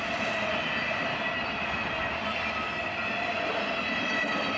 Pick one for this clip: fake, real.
real